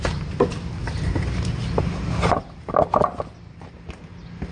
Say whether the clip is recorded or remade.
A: recorded